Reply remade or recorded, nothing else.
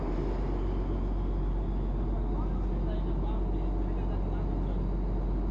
recorded